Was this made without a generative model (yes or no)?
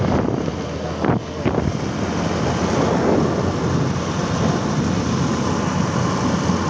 yes